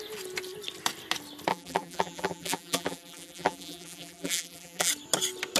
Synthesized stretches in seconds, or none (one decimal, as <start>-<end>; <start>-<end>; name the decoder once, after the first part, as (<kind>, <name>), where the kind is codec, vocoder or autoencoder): 1.5-4.9 (vocoder, BigVGAN v2)